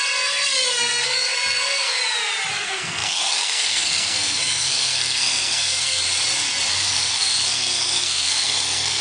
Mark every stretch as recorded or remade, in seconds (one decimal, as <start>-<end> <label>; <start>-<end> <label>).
0.0-2.0 remade; 2.0-2.5 recorded; 2.5-6.0 remade; 6.0-6.7 recorded; 6.7-9.0 remade